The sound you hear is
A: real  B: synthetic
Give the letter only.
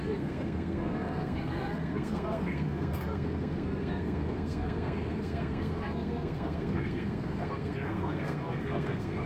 B